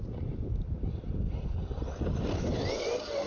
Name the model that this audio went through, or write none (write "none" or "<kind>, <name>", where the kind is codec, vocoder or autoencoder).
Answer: none